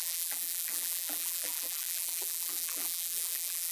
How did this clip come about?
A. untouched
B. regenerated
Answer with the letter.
B